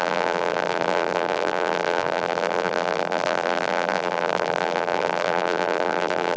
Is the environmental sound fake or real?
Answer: fake